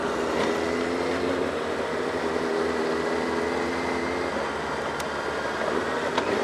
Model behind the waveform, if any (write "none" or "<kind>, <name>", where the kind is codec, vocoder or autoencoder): none